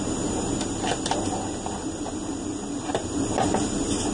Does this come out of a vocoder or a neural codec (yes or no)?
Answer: no